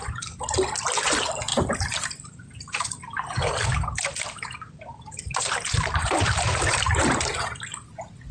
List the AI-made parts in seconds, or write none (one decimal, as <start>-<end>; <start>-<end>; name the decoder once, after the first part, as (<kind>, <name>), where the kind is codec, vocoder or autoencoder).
1.5-2.9 (vocoder, BigVGAN v2); 6.0-7.6

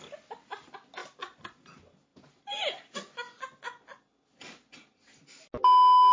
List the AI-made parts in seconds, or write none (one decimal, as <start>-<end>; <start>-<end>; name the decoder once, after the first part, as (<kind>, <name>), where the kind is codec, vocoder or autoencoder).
none

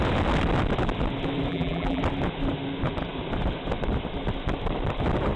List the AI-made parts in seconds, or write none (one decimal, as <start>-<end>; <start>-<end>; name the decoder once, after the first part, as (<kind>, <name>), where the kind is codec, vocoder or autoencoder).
1.5-2.0 (vocoder, BigVGAN v2)

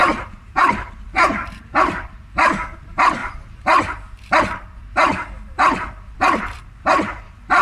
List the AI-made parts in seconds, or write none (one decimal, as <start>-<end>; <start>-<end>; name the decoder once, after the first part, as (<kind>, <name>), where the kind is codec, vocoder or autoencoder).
0.0-7.6 (vocoder, BigVGAN v2)

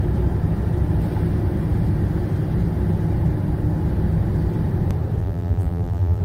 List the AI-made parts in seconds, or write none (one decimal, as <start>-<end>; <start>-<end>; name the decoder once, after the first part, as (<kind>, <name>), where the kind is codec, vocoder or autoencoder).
5.2-6.2 (vocoder, BigVGAN v2)

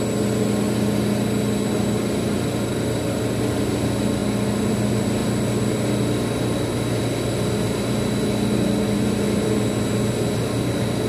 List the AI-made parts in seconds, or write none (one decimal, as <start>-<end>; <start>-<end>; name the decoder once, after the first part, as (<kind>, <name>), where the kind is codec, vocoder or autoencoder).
none

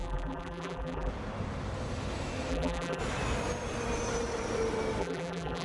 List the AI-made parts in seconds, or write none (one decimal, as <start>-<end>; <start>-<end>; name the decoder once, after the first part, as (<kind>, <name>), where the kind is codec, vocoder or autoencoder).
0.0-1.1 (vocoder, BigVGAN v2); 2.5-3.0; 5.0-5.6

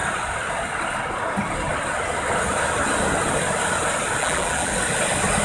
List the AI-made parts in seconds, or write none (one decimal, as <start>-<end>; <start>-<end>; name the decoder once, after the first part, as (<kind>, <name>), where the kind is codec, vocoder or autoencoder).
4.2-4.7 (vocoder, BigVGAN v2)